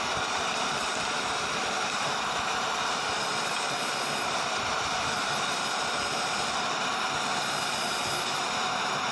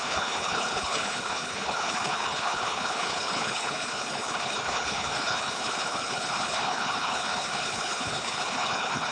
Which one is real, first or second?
first